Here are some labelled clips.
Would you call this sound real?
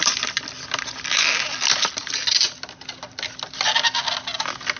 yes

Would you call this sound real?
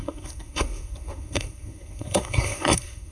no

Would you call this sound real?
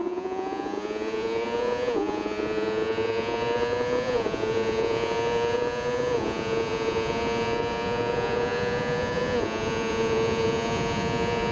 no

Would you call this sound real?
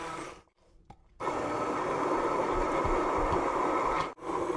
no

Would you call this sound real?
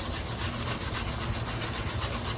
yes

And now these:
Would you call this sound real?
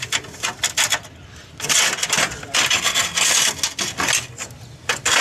yes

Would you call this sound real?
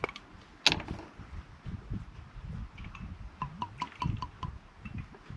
yes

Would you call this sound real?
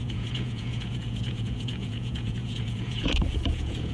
no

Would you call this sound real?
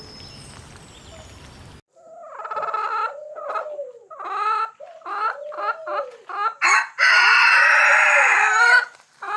yes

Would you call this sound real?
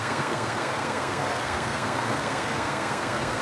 no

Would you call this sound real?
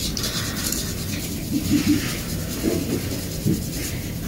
yes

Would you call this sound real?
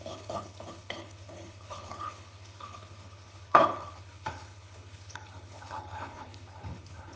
no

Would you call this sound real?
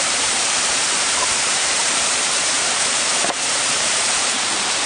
no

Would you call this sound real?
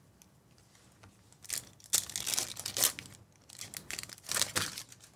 yes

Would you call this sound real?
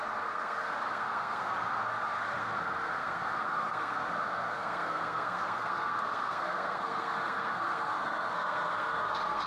no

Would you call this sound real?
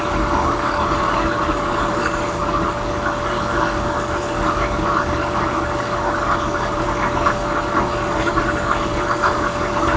no